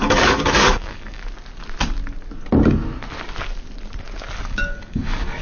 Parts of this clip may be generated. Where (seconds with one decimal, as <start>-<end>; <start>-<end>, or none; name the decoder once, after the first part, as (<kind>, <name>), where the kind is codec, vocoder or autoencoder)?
0.0-1.2 (codec, DAC); 4.4-5.4